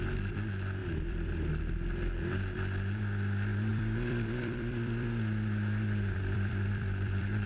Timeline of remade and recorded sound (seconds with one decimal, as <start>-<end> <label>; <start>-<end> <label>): 0.0-0.8 recorded; 0.8-1.5 remade; 1.5-3.7 recorded; 3.7-7.5 remade